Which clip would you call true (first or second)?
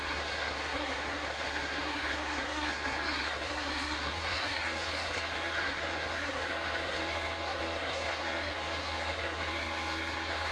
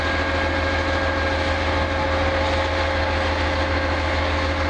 second